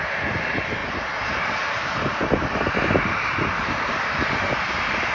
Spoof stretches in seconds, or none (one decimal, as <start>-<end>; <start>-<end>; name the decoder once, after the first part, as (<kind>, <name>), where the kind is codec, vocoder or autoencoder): none